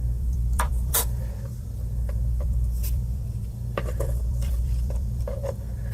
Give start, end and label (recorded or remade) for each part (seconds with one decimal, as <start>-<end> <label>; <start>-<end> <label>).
0.0-5.9 remade